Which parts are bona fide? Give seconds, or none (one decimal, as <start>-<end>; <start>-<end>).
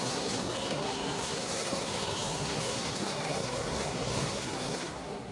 none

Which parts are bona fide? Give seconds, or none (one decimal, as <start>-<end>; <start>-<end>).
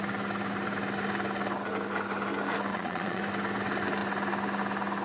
0.0-2.7; 3.2-5.0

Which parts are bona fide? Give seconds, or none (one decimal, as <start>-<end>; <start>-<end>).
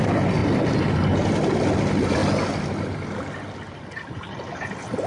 0.0-5.1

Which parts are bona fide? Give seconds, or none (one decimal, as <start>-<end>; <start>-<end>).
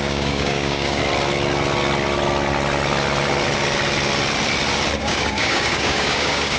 1.0-5.0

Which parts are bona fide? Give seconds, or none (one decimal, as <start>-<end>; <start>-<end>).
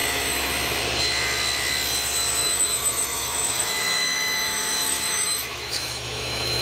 0.5-2.4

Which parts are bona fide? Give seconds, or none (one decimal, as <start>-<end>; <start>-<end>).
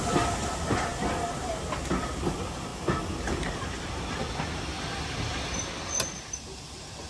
0.0-7.1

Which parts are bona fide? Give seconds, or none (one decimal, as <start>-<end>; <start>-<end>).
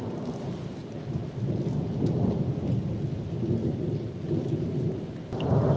0.0-3.6; 4.2-5.8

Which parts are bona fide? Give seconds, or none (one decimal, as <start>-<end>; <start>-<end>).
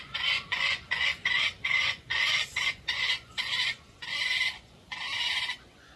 none